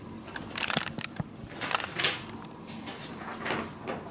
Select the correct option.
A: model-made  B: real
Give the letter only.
B